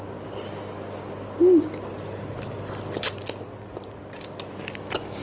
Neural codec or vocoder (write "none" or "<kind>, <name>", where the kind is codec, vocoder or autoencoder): none